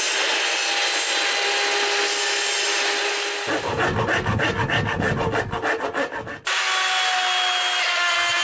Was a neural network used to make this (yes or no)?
no